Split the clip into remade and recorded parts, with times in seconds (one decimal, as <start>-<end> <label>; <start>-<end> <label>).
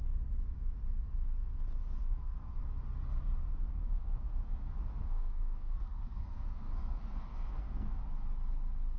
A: 0.0-2.0 recorded; 2.0-2.6 remade; 2.6-3.7 recorded; 3.7-8.0 remade; 8.0-9.0 recorded